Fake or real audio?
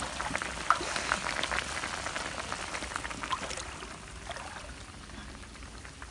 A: real